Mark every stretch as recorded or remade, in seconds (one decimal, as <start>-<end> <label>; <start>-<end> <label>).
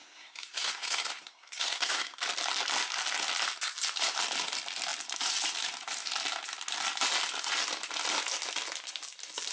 0.0-2.2 remade; 2.2-9.5 recorded